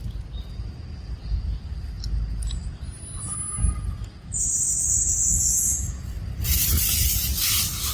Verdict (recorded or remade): recorded